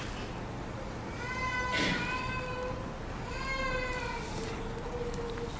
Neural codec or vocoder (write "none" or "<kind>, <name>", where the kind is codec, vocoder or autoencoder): none